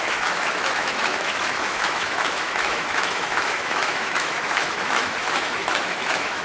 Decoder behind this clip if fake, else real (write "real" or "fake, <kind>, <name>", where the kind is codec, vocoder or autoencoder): fake, autoencoder, DAC-VAE